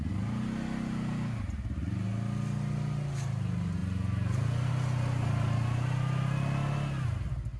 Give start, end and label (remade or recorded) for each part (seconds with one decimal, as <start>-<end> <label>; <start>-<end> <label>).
0.0-7.6 recorded